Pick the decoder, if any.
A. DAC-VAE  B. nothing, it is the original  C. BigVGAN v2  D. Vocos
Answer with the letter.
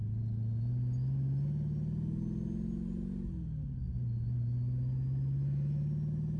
B